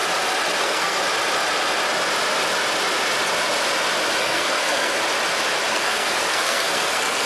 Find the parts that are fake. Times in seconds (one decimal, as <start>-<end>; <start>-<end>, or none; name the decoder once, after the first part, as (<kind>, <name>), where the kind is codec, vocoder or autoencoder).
0.6-1.0 (codec, SNAC); 4.2-5.0; 5.7-7.3

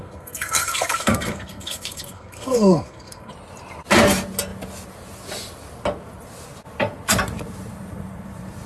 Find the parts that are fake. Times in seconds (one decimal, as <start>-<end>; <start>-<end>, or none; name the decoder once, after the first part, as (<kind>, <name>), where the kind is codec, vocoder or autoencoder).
0.0-3.3 (codec, SNAC)

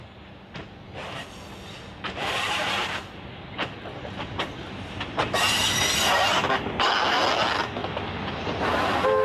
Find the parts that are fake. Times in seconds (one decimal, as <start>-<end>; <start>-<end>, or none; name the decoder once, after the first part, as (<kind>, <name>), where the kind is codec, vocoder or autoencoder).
none

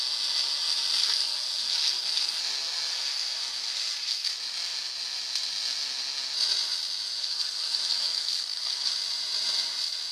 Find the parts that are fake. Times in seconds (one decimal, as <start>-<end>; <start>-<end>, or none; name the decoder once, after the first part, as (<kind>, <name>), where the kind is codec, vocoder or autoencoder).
1.0-2.4 (codec, SNAC); 2.9-4.3; 7.2-8.9

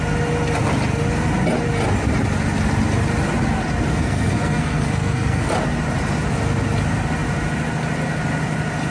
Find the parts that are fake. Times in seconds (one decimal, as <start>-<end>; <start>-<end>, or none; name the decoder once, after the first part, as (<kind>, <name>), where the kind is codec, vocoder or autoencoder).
3.9-5.5 (codec, SNAC)

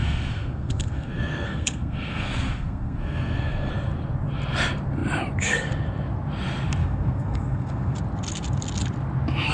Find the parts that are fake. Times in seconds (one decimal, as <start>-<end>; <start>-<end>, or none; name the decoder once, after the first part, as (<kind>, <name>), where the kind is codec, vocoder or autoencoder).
0.0-3.7 (codec, SNAC); 6.8-8.0

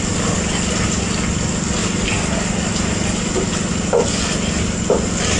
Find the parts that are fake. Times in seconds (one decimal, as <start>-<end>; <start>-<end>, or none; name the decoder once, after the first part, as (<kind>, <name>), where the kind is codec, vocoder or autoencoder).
none